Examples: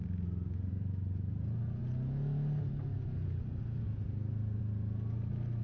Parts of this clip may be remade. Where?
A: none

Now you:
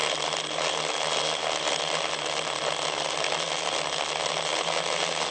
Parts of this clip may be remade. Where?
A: none